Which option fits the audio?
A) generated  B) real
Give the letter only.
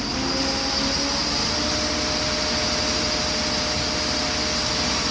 B